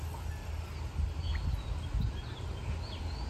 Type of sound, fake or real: real